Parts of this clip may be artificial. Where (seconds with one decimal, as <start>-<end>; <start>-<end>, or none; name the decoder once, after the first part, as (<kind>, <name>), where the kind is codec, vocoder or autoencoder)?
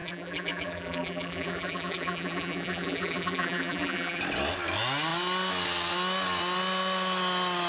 0.0-4.2 (vocoder, BigVGAN v2)